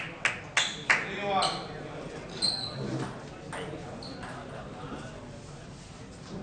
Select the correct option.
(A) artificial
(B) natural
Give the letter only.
B